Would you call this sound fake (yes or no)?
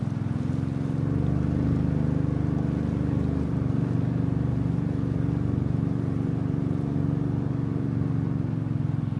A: no